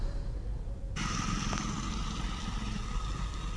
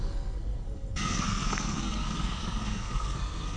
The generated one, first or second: second